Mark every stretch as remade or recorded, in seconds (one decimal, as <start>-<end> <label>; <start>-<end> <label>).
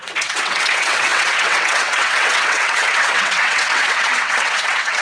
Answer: 0.0-5.0 remade